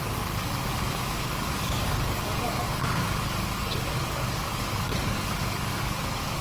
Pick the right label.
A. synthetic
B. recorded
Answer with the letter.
A